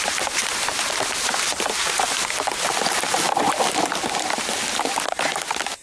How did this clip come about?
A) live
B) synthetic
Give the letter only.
A